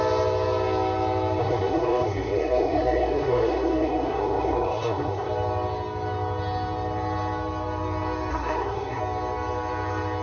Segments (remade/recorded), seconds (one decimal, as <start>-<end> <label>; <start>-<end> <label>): 0.0-1.4 recorded; 1.4-5.3 remade; 5.3-8.3 recorded; 8.3-9.0 remade; 9.0-10.2 recorded